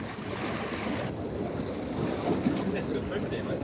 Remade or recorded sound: recorded